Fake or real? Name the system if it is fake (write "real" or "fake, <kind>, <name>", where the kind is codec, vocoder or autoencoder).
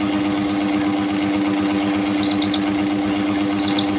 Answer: real